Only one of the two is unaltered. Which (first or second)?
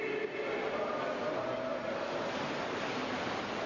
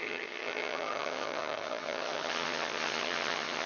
first